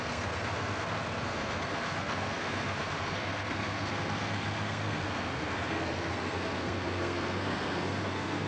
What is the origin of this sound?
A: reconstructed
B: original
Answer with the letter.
A